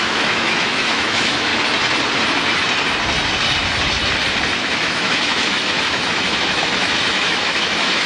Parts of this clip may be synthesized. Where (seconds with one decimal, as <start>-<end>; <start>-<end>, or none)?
0.0-1.5; 4.6-8.1

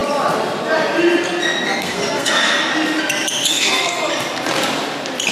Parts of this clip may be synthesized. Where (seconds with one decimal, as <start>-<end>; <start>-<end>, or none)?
1.8-2.7; 3.5-4.0

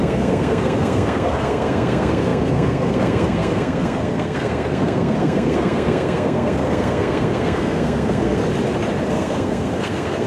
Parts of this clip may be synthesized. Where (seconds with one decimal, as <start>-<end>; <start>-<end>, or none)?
0.0-8.4; 9.1-10.3

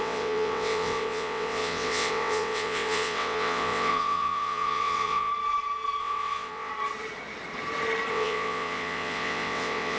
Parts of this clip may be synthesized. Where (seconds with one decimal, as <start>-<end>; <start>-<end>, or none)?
0.0-5.3; 6.0-6.7; 8.1-10.0